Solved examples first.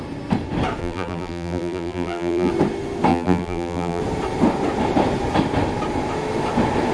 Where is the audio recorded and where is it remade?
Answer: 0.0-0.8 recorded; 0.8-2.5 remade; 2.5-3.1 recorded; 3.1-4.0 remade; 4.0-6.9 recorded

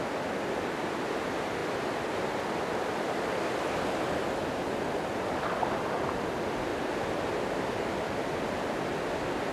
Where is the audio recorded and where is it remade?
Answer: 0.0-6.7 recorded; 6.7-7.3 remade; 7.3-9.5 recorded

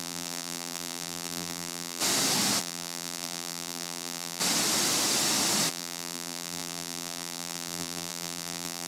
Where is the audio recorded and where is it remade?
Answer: 0.0-2.0 remade; 2.0-2.6 recorded; 2.6-4.4 remade; 4.4-5.7 recorded; 5.7-8.9 remade

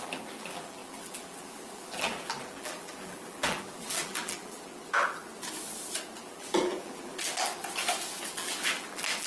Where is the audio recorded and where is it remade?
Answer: 0.0-5.2 remade; 5.2-6.2 recorded; 6.2-7.6 remade; 7.6-8.3 recorded; 8.3-9.3 remade

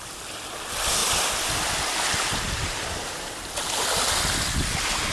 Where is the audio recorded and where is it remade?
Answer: 0.0-5.1 recorded

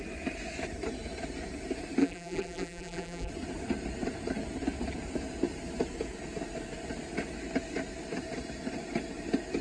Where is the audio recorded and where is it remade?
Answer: 0.0-2.0 recorded; 2.0-3.3 remade; 3.3-9.6 recorded

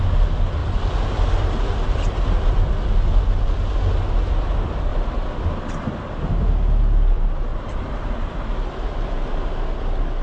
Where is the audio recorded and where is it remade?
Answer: 0.0-0.6 recorded; 0.6-2.7 remade; 2.7-4.9 recorded; 4.9-6.5 remade; 6.5-7.5 recorded; 7.5-8.1 remade; 8.1-10.2 recorded

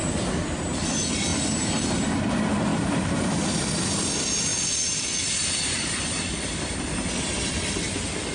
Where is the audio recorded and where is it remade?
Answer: 0.0-0.6 remade; 0.6-1.3 recorded; 1.3-1.9 remade; 1.9-2.7 recorded; 2.7-3.9 remade; 3.9-4.5 recorded; 4.5-6.8 remade; 6.8-8.3 recorded